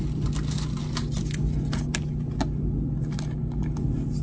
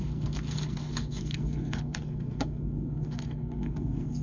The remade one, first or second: second